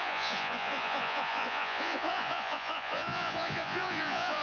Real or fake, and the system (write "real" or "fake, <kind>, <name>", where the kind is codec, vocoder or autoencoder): fake, vocoder, Vocos